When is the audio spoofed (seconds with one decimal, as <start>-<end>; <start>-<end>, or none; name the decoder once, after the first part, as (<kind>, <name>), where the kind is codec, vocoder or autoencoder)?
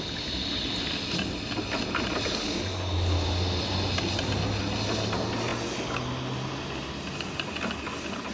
none